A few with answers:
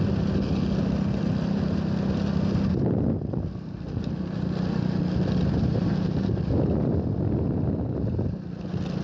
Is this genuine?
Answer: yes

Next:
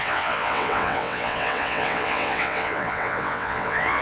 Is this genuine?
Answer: no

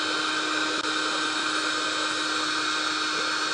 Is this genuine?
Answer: yes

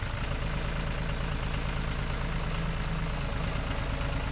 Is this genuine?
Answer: yes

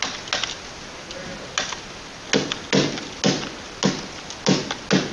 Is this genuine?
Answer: yes